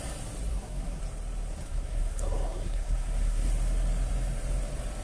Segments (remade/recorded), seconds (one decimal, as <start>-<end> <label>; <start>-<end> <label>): 0.0-0.5 recorded; 0.5-1.0 remade; 1.0-1.6 recorded; 1.6-3.5 remade; 3.5-5.0 recorded